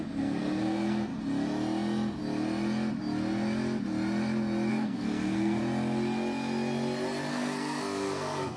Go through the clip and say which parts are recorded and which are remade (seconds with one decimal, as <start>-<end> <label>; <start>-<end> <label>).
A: 0.0-1.1 remade; 1.1-4.7 recorded; 4.7-5.6 remade; 5.6-7.3 recorded; 7.3-8.6 remade